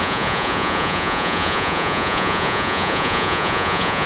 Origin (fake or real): fake